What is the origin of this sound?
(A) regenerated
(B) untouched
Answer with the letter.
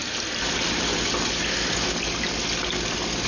B